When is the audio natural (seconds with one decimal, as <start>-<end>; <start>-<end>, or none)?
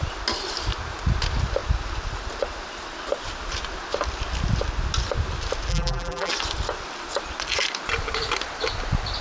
0.0-5.7; 6.3-9.2